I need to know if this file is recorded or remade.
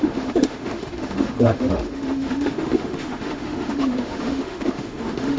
remade